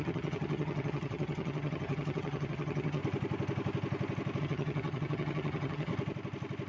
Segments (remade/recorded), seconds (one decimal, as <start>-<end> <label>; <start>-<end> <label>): 0.0-3.0 remade; 3.0-4.4 recorded; 4.4-5.9 remade; 5.9-6.7 recorded